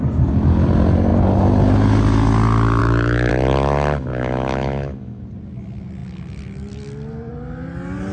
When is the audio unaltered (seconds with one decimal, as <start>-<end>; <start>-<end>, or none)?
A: 0.0-2.8; 3.3-4.1; 5.2-8.1